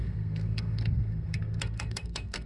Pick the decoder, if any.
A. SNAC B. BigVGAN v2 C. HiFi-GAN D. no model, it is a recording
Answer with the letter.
A